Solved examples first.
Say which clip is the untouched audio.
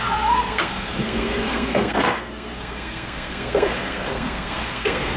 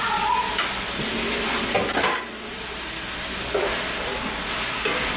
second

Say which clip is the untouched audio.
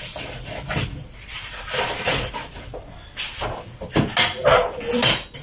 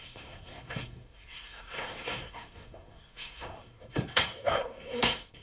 first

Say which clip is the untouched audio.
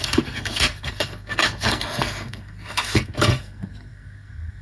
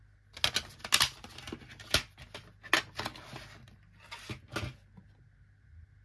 second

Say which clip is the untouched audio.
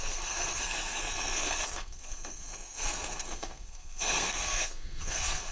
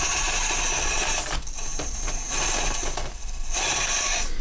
second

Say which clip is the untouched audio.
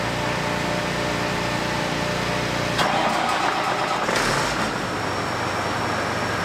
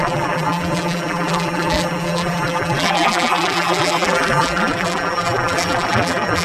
first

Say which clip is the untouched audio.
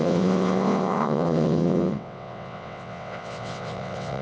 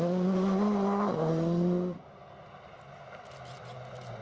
second